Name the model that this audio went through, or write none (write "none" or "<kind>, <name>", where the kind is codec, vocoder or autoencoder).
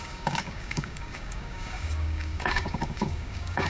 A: codec, DAC